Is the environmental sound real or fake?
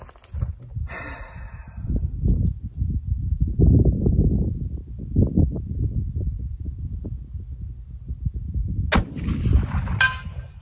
real